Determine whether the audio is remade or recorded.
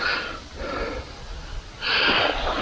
recorded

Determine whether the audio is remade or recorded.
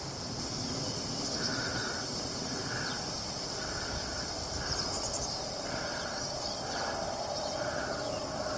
recorded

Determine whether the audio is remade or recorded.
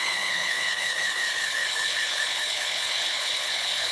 remade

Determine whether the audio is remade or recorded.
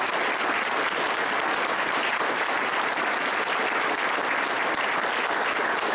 recorded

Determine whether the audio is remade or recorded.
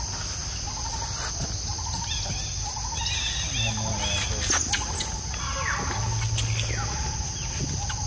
recorded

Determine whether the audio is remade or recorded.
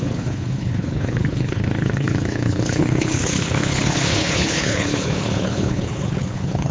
remade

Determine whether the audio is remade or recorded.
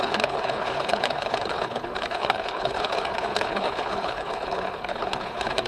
remade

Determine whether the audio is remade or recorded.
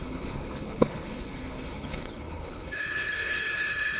remade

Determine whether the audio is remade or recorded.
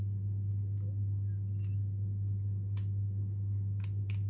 recorded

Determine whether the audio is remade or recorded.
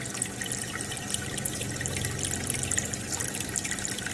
recorded